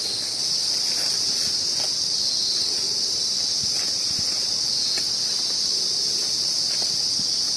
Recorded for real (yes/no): yes